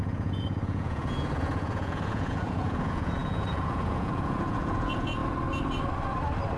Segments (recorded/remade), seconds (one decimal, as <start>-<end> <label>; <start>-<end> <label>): 0.0-5.2 remade; 5.2-6.6 recorded